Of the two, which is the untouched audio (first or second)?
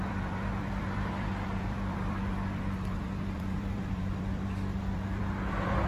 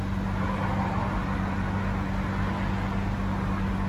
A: second